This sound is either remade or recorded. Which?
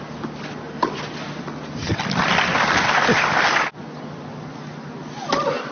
recorded